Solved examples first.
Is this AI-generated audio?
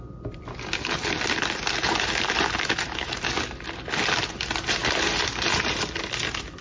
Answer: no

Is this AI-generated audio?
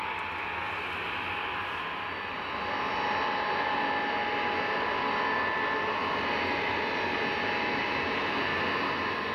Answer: no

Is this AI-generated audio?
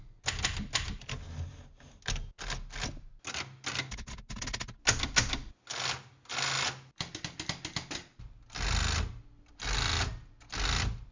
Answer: no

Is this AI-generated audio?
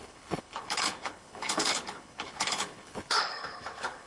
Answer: yes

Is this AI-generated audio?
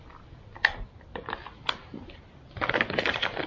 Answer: no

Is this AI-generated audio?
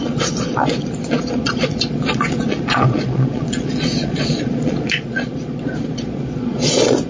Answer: yes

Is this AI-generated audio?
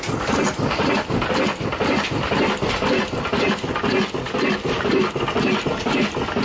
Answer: no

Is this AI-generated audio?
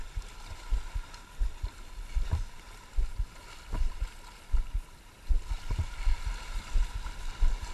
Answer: no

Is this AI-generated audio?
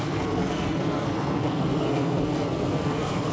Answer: yes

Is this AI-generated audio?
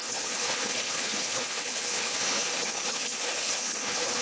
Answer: yes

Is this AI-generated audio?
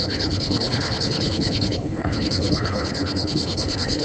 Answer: yes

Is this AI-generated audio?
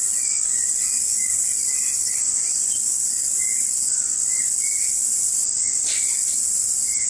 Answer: no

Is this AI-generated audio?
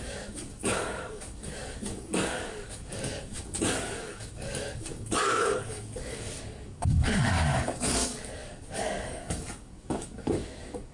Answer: yes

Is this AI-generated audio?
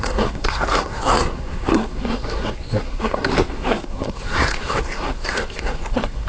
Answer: yes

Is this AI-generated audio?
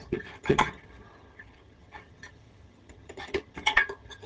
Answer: yes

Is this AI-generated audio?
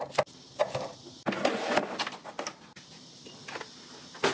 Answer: no